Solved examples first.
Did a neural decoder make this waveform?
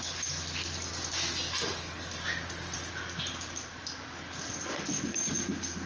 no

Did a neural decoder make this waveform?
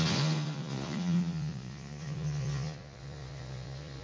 yes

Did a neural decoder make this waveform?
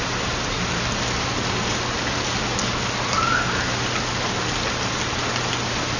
no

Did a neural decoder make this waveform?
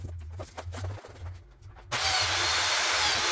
no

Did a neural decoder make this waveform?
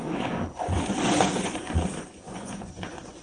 yes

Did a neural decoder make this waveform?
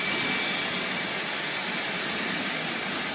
no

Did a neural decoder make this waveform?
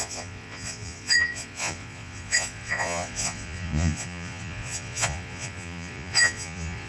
yes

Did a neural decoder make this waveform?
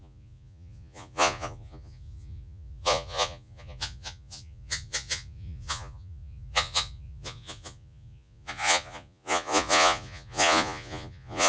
yes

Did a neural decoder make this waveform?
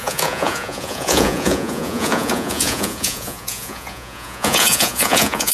yes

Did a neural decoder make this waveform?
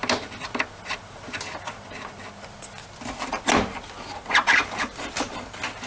no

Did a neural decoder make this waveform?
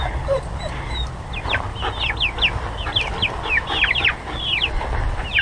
no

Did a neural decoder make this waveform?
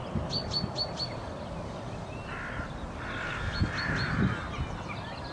no